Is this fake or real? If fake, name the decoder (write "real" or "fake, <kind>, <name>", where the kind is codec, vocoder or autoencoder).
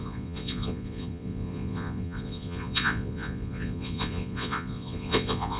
fake, vocoder, Vocos